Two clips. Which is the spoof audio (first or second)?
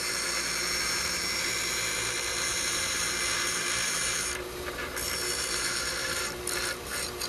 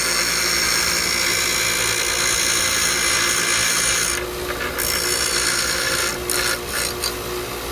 first